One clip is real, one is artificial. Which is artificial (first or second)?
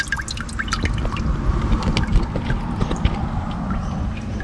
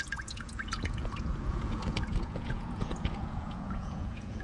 second